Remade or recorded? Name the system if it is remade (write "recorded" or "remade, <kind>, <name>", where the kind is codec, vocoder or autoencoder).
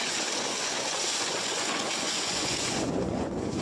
remade, vocoder, Vocos